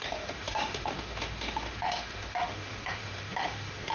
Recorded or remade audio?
remade